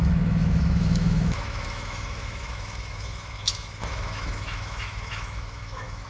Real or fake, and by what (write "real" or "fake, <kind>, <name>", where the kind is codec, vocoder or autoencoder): fake, autoencoder, DAC-VAE